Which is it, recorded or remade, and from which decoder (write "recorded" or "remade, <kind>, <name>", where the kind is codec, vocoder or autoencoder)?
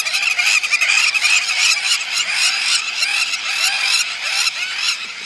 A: recorded